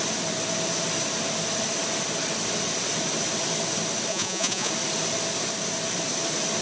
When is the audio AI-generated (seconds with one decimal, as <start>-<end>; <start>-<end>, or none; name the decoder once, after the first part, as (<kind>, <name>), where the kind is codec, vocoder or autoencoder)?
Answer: 4.1-4.7 (vocoder, Vocos)